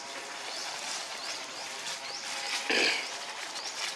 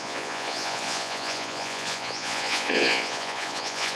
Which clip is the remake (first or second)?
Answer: second